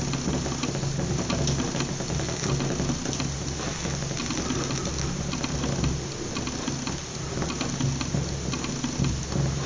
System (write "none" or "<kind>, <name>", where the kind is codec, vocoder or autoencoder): none